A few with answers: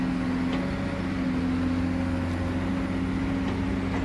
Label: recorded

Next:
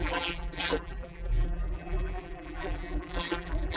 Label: remade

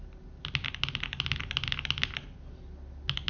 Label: recorded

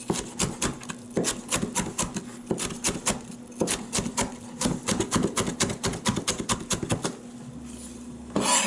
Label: recorded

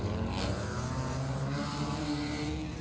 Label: remade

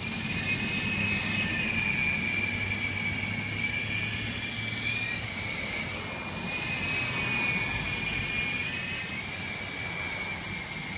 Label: recorded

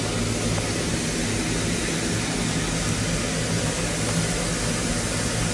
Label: recorded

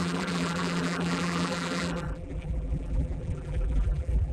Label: remade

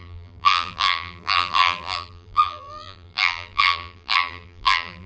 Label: remade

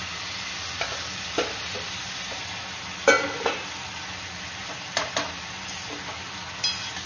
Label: recorded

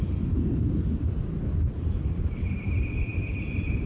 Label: recorded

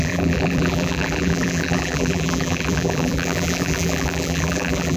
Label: remade